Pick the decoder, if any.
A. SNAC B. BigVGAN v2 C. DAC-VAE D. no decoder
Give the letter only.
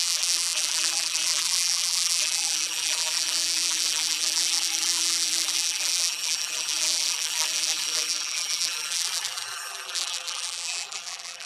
B